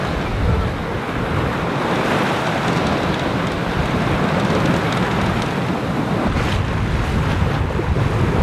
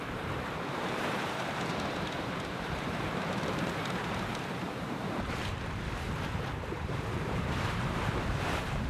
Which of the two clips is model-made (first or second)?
second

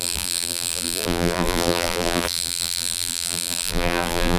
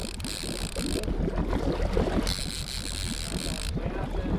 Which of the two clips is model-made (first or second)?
first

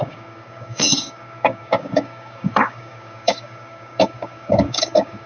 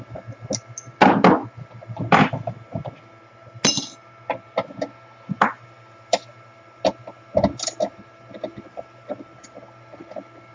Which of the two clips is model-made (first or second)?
first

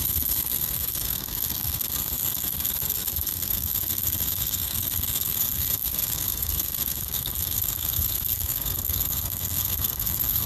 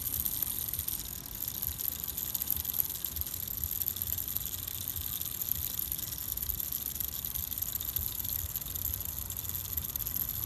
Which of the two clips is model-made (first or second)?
first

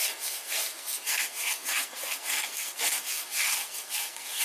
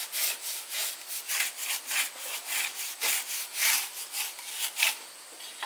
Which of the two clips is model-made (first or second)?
first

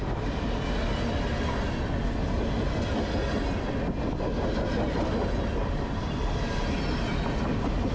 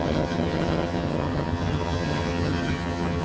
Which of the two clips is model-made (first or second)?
second